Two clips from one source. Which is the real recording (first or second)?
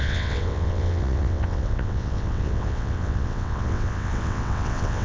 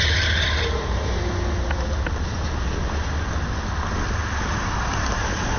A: second